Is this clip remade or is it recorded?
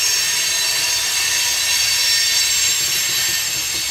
recorded